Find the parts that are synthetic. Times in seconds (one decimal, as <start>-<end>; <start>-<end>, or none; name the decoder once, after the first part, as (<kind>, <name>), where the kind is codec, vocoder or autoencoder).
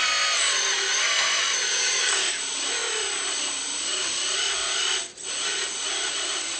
1.7-2.3 (codec, DAC)